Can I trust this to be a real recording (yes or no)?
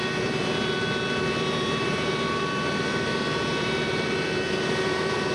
no